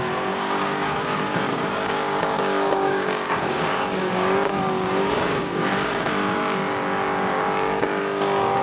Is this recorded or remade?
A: remade